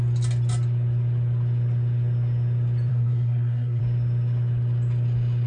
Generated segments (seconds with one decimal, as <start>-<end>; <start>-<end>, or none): 2.9-3.8